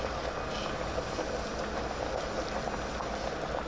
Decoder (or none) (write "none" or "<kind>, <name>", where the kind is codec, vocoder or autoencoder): none